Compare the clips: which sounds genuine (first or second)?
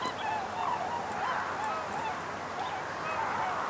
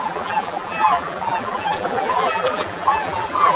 first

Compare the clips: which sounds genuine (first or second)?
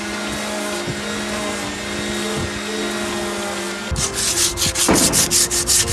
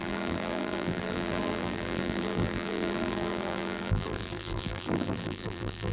first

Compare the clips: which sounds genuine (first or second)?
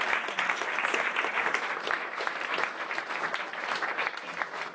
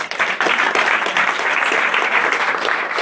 first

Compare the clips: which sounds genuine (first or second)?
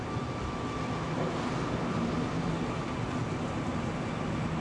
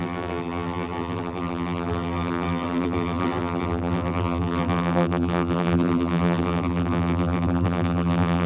first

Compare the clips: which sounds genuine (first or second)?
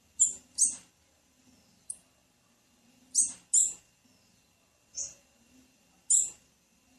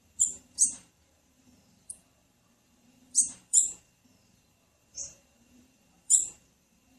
first